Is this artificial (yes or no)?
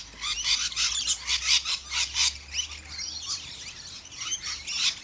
no